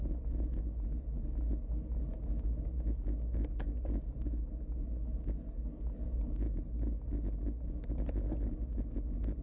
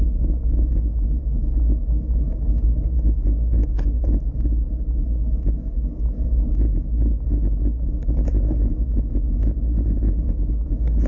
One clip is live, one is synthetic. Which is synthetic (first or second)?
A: second